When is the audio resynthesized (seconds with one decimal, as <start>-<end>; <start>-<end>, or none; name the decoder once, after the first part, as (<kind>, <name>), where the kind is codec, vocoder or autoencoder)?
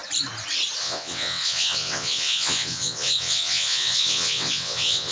0.8-5.1 (vocoder, WaveNeXt)